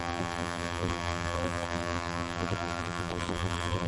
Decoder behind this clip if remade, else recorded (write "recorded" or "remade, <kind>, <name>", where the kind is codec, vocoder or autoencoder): remade, vocoder, BigVGAN v2